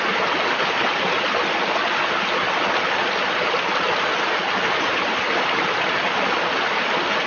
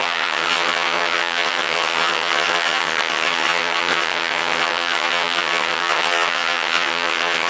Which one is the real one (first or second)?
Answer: first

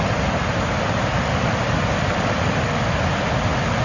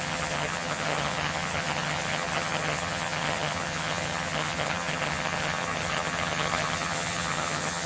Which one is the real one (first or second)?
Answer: first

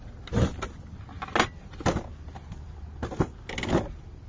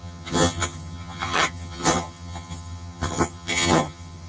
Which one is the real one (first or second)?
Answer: first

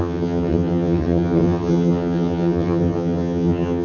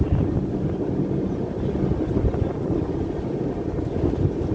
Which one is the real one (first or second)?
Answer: second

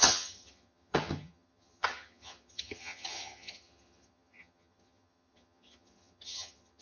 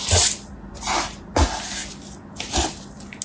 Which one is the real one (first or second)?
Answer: second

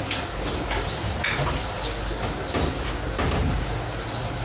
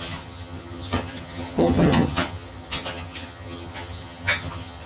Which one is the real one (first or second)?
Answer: first